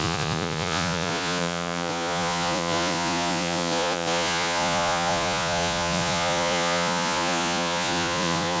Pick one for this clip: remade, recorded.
remade